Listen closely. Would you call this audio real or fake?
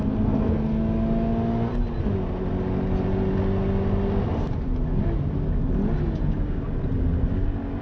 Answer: real